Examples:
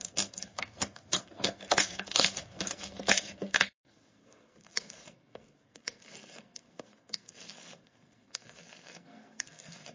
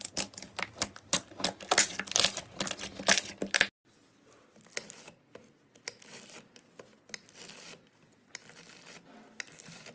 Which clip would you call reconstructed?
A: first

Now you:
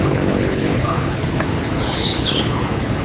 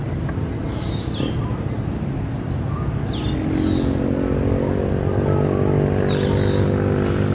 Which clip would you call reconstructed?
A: first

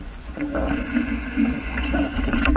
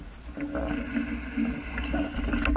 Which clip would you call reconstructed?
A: first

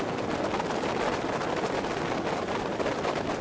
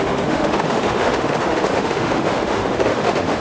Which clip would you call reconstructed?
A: second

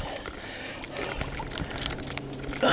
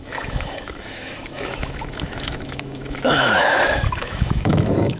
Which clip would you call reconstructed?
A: second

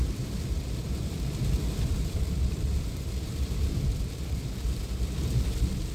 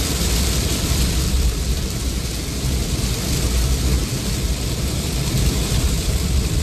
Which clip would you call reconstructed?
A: first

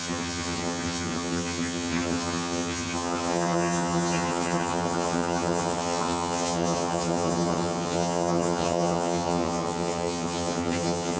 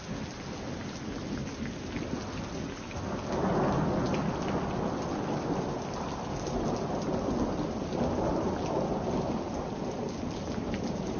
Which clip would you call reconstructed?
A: first